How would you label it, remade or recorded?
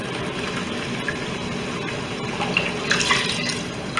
recorded